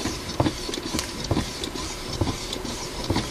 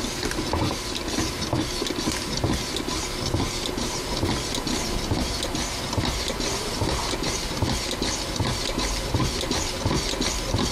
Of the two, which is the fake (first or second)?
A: first